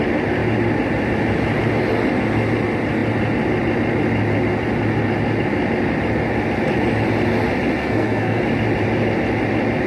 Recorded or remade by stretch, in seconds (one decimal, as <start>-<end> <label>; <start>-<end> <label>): 0.0-7.8 recorded; 7.8-8.4 remade; 8.4-9.9 recorded

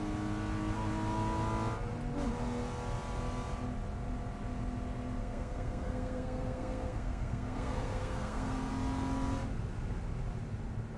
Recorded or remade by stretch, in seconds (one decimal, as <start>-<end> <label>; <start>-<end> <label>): 0.0-5.2 recorded; 5.2-8.7 remade; 8.7-11.0 recorded

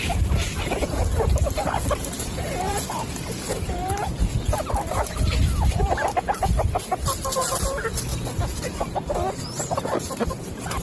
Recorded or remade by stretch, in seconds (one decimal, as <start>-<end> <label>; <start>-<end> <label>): 0.0-8.1 remade; 8.1-8.6 recorded; 8.6-10.8 remade

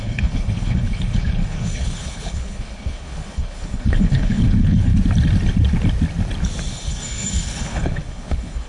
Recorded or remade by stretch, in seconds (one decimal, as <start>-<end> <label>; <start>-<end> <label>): 0.0-4.9 remade; 4.9-6.7 recorded; 6.7-8.7 remade

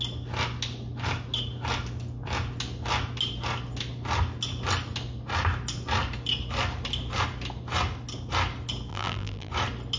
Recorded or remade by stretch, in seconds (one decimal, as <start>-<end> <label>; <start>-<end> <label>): 0.0-8.9 recorded; 8.9-9.5 remade; 9.5-10.0 recorded

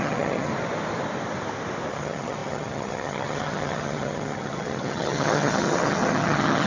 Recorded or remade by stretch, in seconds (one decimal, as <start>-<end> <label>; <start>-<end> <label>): 0.0-0.5 remade; 0.5-1.9 recorded; 1.9-6.7 remade